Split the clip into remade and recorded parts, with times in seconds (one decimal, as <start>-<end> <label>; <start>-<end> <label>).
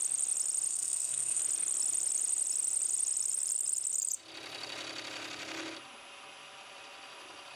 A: 0.0-0.7 recorded; 0.7-1.4 remade; 1.4-7.6 recorded